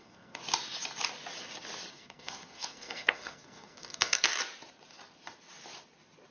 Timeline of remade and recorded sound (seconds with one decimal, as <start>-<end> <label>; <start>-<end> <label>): 0.0-0.4 remade; 0.4-1.9 recorded; 1.9-4.3 remade; 4.3-6.3 recorded